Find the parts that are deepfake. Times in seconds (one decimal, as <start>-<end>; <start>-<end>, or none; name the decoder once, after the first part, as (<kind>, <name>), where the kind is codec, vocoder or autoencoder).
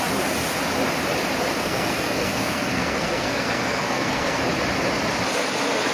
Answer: 1.5-4.4 (codec, SNAC)